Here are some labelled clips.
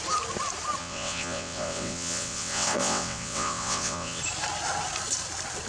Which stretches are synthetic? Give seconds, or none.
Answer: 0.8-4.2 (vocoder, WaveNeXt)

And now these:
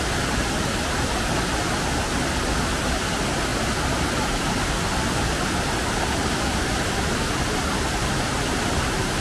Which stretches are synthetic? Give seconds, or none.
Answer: none